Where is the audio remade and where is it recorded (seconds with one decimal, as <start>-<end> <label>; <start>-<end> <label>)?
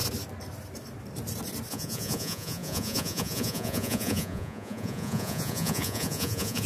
0.0-1.7 recorded; 1.7-6.7 remade